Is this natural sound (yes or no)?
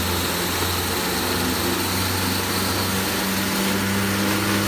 yes